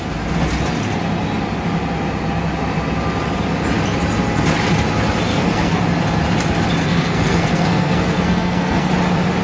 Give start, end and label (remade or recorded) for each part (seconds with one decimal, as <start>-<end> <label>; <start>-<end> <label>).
0.0-5.3 recorded; 5.3-5.8 remade; 5.8-6.8 recorded; 6.8-8.9 remade; 8.9-9.4 recorded